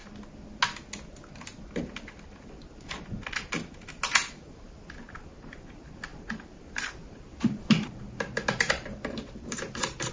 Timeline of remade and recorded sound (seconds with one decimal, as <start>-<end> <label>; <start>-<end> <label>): 0.0-6.1 recorded; 6.1-10.1 remade